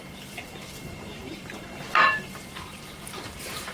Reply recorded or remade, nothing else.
remade